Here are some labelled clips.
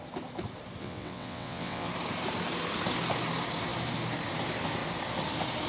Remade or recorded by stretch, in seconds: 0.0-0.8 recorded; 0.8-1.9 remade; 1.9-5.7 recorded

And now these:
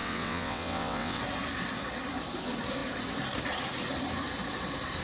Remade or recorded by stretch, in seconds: 0.0-1.2 remade; 1.2-5.0 recorded

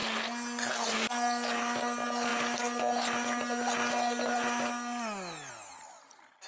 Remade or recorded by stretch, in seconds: 0.0-6.5 recorded

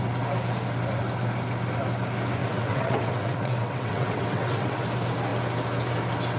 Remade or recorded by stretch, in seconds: 0.0-2.4 recorded; 2.4-4.8 remade; 4.8-6.4 recorded

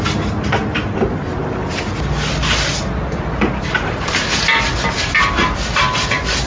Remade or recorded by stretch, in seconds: 0.0-6.5 recorded

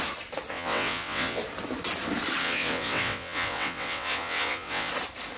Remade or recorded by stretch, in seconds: 0.0-0.5 recorded; 0.5-1.4 remade; 1.4-2.4 recorded; 2.4-4.9 remade; 4.9-5.4 recorded